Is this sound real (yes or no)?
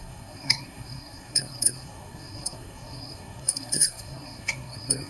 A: no